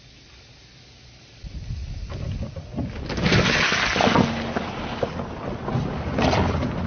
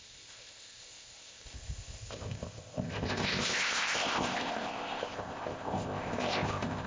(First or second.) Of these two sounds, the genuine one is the first